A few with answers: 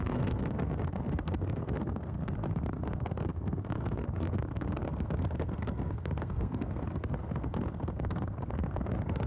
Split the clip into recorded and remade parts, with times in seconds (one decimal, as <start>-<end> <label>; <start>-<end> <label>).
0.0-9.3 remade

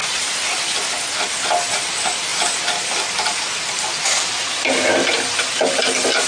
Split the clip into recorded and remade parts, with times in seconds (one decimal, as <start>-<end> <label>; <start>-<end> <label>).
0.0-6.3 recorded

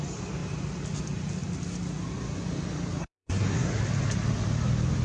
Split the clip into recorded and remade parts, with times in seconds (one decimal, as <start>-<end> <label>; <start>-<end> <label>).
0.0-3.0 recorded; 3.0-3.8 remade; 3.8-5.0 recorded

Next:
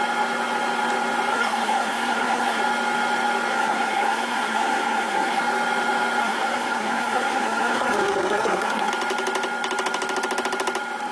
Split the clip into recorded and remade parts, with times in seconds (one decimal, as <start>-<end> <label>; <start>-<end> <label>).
0.0-1.3 recorded; 1.3-2.6 remade; 2.6-3.5 recorded; 3.5-5.4 remade; 5.4-6.2 recorded; 6.2-8.9 remade; 8.9-11.1 recorded